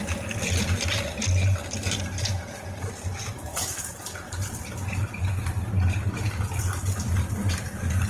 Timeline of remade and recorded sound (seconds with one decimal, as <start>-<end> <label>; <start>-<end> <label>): 0.0-8.1 recorded